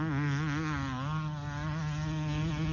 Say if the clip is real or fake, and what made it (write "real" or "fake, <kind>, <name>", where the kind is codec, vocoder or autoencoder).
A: real